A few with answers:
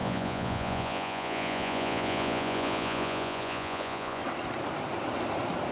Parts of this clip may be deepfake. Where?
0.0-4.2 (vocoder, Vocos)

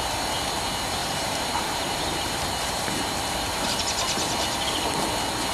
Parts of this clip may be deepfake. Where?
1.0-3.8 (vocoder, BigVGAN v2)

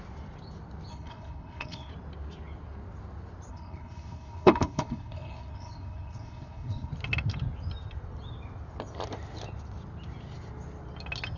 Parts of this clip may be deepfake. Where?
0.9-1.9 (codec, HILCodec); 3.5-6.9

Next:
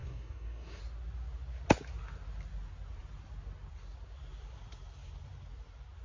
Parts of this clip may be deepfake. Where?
0.0-0.8 (codec, DAC)

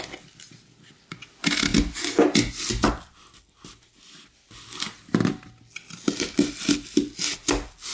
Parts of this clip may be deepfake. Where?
none

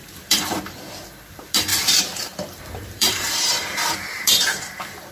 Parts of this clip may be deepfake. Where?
0.0-0.6 (vocoder, BigVGAN v2); 1.7-5.1

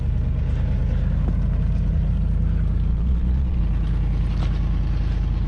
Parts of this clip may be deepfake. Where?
2.9-3.6 (vocoder, Vocos)